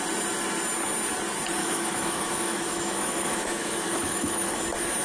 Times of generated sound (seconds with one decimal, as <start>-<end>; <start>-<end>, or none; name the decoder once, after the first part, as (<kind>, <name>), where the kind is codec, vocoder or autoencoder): 1.6-4.6 (autoencoder, DAC-VAE)